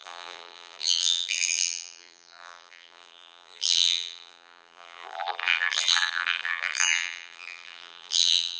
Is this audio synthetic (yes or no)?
yes